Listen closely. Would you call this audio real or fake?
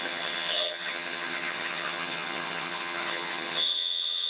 fake